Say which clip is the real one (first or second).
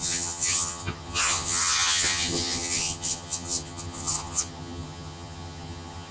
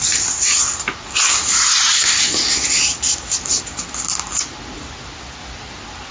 second